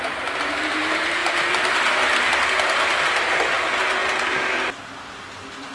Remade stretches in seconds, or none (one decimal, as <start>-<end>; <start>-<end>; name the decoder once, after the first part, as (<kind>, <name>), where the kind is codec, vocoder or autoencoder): none